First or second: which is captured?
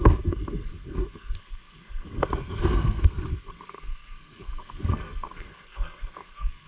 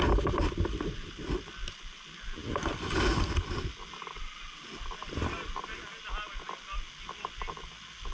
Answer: second